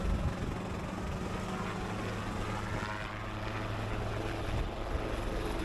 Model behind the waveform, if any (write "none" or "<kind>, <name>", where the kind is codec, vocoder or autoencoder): none